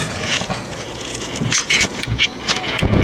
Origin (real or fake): fake